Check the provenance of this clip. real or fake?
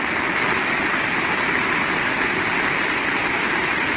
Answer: real